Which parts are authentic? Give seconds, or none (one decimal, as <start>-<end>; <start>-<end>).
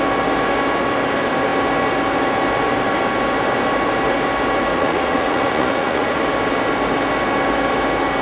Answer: 0.0-4.7; 6.2-8.2